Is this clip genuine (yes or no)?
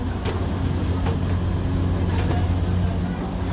yes